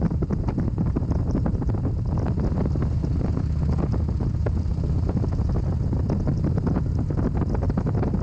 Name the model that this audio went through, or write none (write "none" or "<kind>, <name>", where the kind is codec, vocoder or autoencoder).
none